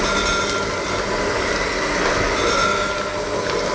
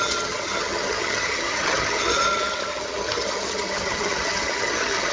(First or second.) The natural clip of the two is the first